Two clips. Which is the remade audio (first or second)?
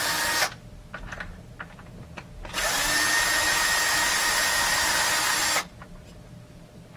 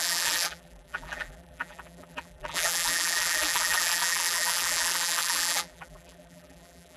second